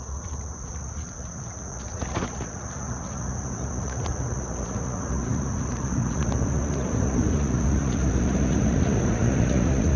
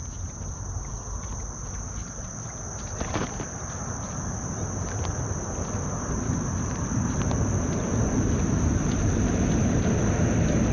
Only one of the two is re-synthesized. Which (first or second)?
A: first